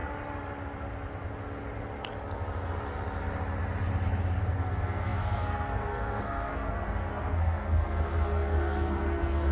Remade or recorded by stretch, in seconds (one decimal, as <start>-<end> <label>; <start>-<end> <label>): 0.0-4.4 recorded; 4.4-9.5 remade